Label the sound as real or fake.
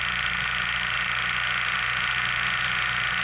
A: real